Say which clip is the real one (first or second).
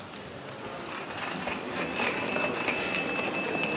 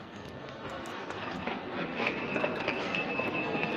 first